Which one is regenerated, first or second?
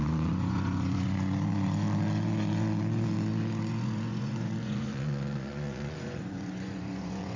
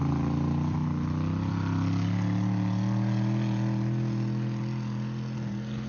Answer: first